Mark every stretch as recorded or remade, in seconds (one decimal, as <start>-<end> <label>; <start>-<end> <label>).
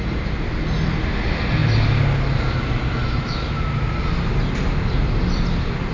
0.0-5.9 recorded